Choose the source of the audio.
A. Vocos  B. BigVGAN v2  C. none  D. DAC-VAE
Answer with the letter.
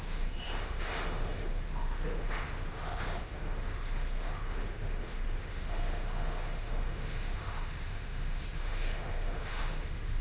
D